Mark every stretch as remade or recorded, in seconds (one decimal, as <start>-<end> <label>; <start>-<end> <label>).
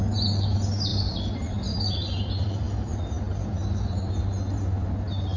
0.0-0.9 recorded; 0.9-4.1 remade; 4.1-5.4 recorded